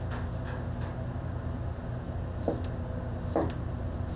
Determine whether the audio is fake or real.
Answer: real